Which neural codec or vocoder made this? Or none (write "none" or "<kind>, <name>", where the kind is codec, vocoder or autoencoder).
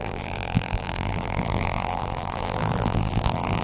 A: vocoder, BigVGAN v2